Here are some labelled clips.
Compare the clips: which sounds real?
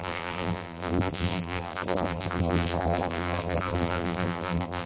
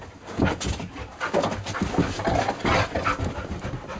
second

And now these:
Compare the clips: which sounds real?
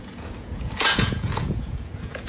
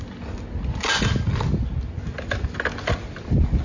second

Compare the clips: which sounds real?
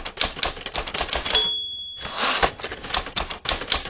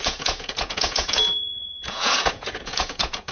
first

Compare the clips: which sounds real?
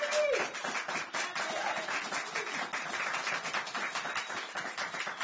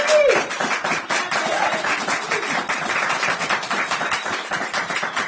first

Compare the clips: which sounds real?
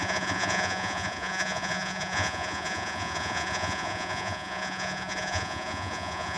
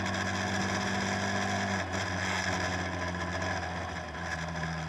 second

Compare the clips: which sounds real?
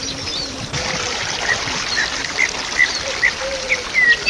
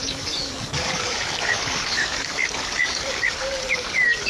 first